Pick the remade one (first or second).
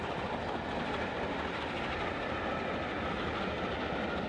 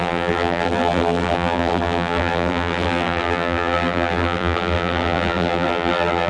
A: second